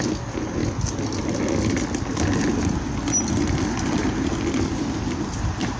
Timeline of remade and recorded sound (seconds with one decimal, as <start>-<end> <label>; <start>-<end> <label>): 0.0-5.8 recorded